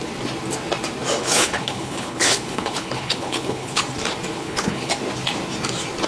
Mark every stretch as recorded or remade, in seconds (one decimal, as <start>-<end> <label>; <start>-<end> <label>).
0.0-1.2 recorded; 1.2-3.8 remade; 3.8-4.3 recorded; 4.3-4.9 remade; 4.9-6.1 recorded